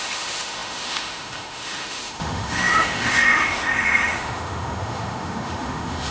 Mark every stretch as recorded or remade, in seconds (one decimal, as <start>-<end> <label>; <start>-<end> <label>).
0.0-6.1 remade